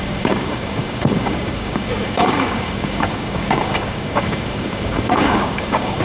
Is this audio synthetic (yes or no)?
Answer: yes